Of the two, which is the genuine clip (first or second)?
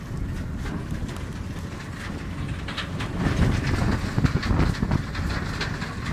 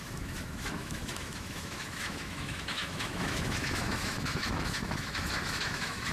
first